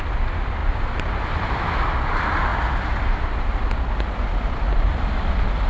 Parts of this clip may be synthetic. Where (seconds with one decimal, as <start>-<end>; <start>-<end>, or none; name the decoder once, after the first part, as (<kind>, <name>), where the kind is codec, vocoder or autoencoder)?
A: 0.0-5.7 (vocoder, BigVGAN v2)